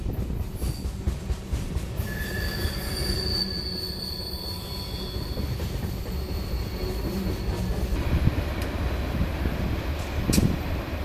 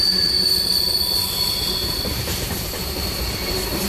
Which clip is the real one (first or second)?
first